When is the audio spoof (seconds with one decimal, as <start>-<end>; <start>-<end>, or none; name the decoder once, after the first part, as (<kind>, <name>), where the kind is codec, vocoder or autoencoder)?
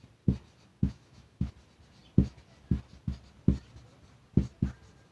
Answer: 0.7-1.5 (autoencoder, DAC-VAE)